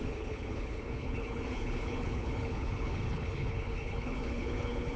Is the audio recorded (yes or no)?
no